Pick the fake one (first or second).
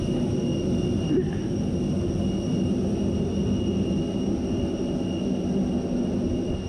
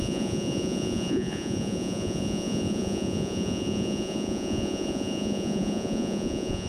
second